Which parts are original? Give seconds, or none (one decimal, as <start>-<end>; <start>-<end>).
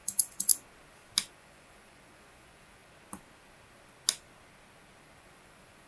0.5-1.3; 2.8-5.2